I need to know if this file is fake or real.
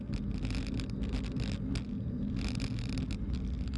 real